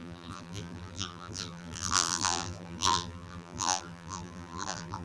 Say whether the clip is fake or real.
fake